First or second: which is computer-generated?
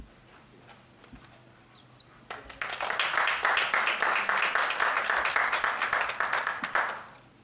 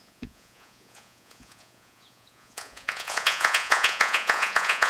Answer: second